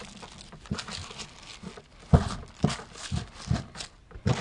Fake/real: real